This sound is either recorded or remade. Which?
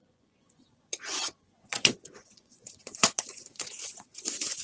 remade